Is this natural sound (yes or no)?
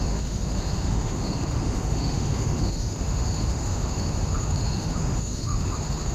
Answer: no